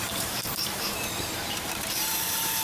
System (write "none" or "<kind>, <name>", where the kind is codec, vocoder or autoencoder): vocoder, BigVGAN v2